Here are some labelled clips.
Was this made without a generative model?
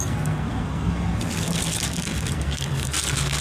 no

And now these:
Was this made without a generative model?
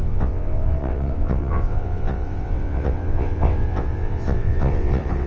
no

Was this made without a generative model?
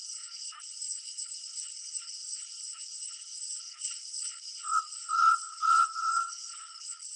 no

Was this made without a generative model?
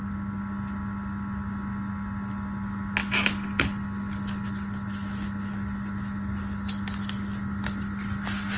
yes